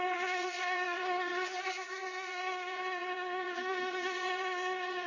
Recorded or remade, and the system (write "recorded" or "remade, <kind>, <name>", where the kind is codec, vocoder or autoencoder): remade, vocoder, WaveNeXt